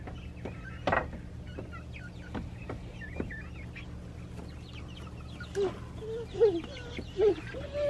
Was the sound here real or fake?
real